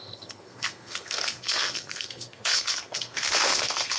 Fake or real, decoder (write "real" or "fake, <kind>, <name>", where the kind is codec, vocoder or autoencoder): fake, codec, SNAC